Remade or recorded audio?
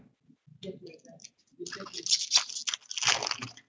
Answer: recorded